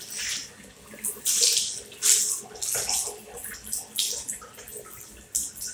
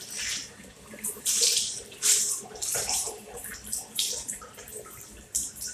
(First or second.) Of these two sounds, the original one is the first